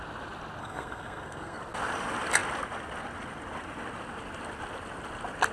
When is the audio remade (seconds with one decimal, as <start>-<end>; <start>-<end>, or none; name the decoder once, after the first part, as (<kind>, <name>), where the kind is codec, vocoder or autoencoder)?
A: 0.6-1.6 (codec, SNAC)